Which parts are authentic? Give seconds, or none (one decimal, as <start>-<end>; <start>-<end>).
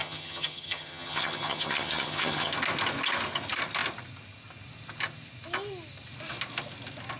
2.5-7.2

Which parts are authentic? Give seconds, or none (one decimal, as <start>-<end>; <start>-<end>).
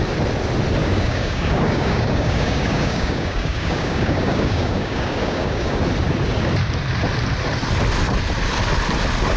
0.0-0.8; 5.8-9.4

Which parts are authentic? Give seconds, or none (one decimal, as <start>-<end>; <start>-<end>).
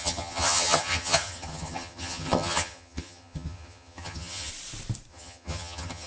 4.5-5.1